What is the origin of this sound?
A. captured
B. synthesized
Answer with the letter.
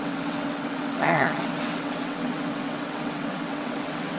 B